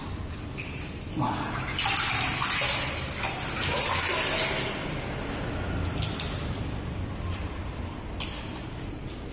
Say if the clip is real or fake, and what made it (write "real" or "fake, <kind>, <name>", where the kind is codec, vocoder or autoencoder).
real